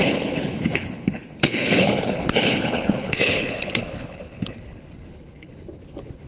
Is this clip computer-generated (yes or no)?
yes